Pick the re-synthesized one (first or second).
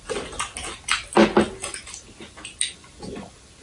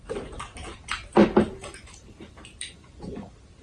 second